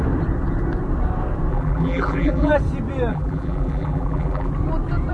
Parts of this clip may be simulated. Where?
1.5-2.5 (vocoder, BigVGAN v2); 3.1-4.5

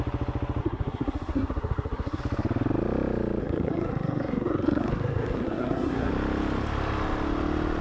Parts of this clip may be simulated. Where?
0.6-2.2 (codec, SNAC); 3.4-6.1

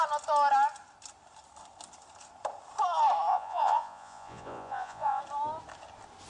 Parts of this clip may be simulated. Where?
3.3-5.2 (vocoder, Vocos)

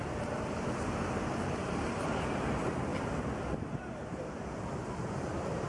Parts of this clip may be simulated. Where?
0.0-2.9 (vocoder, BigVGAN v2); 3.5-5.7